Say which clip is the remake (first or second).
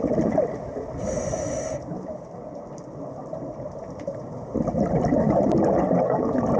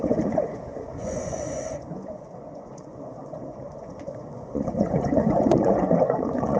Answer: second